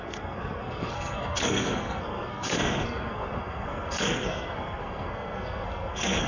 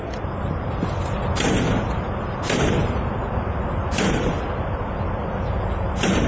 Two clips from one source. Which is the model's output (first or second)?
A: first